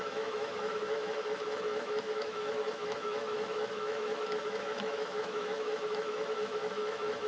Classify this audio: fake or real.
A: fake